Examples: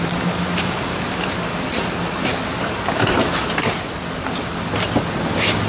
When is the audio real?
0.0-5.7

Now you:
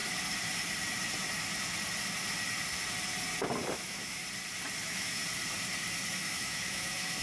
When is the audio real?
0.0-3.7; 4.2-4.8; 5.2-6.2

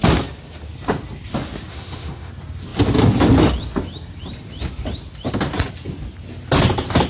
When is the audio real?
0.0-1.7; 2.3-7.1

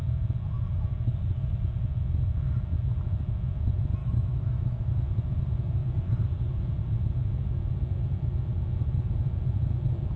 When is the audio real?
0.0-4.0; 4.9-10.2

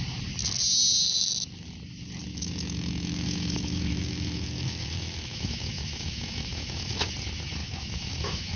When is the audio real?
0.0-2.3; 7.1-7.6

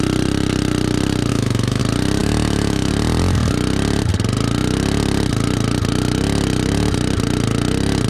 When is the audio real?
0.0-1.3; 1.8-2.2; 2.9-8.1